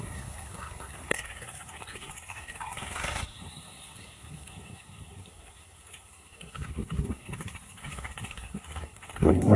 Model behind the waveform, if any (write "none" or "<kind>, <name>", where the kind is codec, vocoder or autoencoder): codec, SNAC